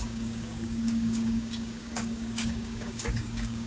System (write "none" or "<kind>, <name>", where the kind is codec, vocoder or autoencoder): codec, DAC